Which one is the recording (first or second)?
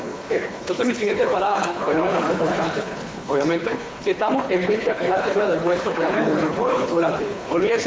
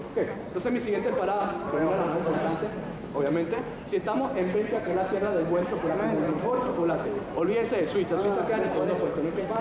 second